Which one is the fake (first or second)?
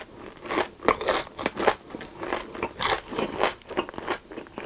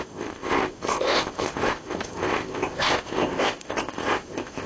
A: second